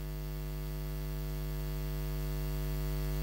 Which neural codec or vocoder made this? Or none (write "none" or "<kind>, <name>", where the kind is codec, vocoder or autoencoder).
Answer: none